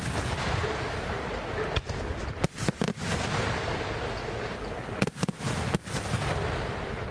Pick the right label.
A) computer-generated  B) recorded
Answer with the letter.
B